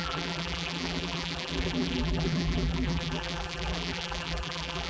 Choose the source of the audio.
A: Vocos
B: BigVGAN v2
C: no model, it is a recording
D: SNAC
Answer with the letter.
B